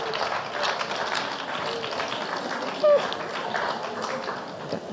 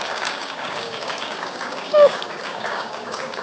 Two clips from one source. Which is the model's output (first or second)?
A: second